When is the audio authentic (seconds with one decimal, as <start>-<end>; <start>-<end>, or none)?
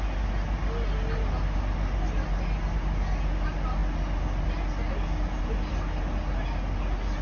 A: 0.0-7.2